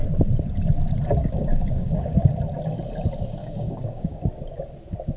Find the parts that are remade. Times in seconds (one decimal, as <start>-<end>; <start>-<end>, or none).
1.2-2.3; 3.4-4.2